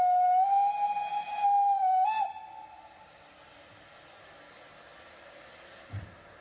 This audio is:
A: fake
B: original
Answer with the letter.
B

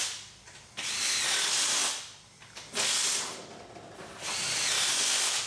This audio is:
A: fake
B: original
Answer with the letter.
B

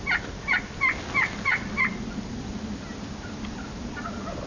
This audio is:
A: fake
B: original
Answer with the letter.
B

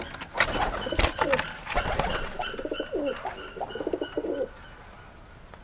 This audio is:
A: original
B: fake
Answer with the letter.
A